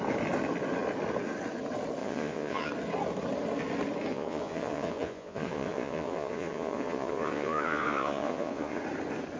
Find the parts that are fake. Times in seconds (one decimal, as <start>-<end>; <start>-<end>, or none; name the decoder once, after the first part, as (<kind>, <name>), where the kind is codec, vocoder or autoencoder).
2.0-2.7 (vocoder, Vocos); 4.1-8.8